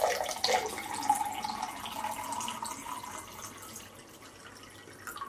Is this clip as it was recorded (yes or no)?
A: yes